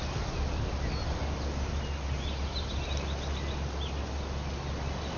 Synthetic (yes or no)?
no